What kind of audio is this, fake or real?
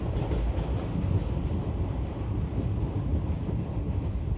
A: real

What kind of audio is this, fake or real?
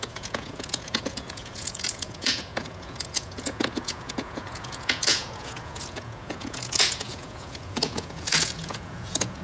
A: fake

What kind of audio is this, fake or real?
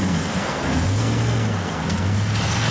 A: fake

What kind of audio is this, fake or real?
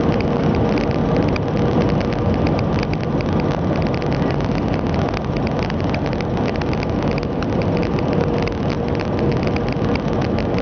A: real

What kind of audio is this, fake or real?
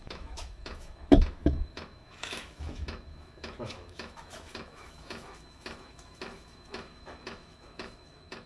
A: fake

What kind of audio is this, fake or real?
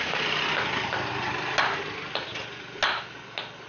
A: real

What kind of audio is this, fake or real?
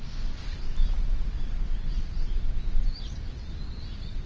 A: real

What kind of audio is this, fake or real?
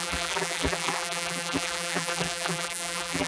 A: fake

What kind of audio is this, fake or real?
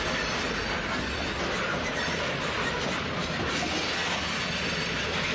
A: real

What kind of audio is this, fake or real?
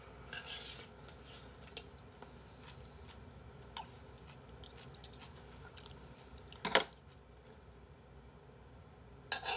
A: real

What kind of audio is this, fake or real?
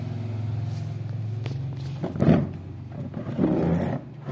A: real